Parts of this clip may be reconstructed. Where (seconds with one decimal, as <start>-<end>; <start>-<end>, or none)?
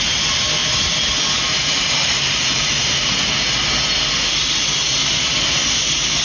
1.5-3.2; 5.0-6.2